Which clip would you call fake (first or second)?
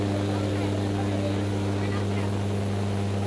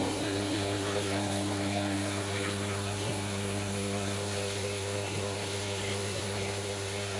second